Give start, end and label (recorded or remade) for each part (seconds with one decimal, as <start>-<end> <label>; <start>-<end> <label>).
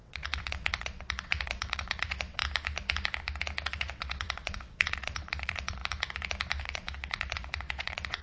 0.0-2.4 remade; 2.4-3.7 recorded; 3.7-5.8 remade; 5.8-6.6 recorded; 6.6-8.2 remade